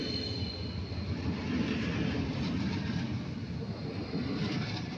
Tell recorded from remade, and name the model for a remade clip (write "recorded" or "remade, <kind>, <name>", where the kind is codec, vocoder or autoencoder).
recorded